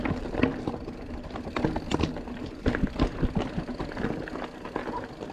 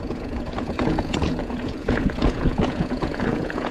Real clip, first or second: first